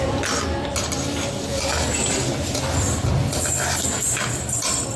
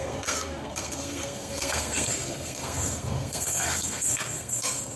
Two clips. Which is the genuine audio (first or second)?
first